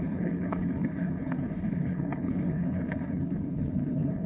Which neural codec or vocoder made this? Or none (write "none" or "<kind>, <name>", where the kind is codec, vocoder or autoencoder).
codec, HILCodec